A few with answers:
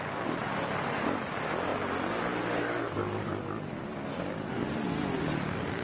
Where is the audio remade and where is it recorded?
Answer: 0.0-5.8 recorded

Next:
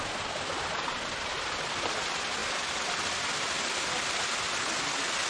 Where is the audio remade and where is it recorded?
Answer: 0.0-5.3 recorded

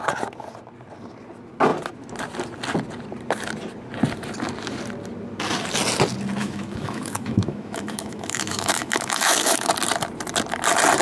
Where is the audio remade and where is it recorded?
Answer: 0.0-6.4 recorded; 6.4-9.7 remade; 9.7-11.0 recorded

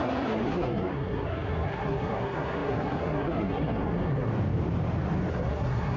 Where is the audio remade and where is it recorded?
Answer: 0.0-4.3 remade; 4.3-5.3 recorded; 5.3-6.0 remade

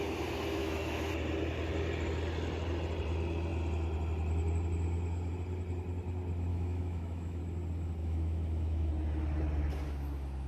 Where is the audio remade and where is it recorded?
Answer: 0.0-0.6 recorded; 0.6-1.1 remade; 1.1-6.5 recorded; 6.5-7.4 remade; 7.4-8.0 recorded; 8.0-8.9 remade; 8.9-10.5 recorded